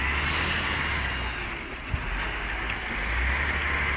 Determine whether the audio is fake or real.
real